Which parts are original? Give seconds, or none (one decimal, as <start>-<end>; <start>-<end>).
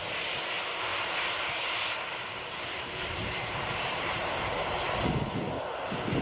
0.0-0.9; 4.6-6.2